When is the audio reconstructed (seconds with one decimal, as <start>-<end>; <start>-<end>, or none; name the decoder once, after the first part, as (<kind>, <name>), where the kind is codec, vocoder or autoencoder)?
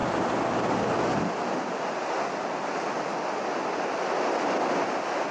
none